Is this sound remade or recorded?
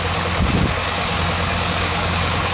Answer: remade